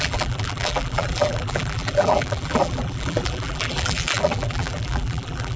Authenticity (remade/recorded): remade